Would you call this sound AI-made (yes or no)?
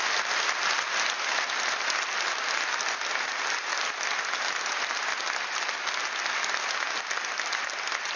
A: no